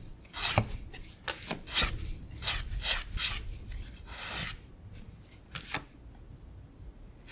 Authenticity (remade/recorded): recorded